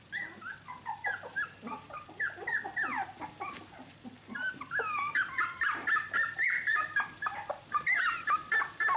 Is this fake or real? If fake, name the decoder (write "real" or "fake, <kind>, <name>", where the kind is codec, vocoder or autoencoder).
fake, vocoder, BigVGAN v2